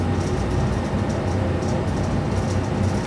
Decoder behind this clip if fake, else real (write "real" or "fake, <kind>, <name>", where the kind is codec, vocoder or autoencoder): real